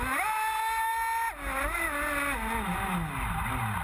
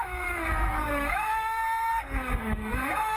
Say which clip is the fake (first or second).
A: second